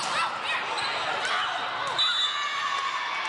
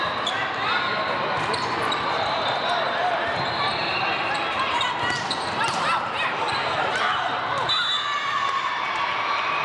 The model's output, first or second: second